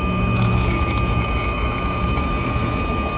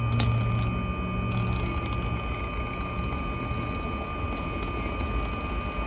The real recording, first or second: second